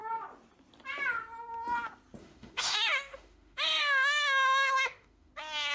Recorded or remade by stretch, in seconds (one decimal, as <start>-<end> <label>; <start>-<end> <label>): 0.0-2.2 recorded; 2.2-5.3 remade; 5.3-5.7 recorded